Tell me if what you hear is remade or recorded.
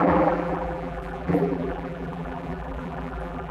remade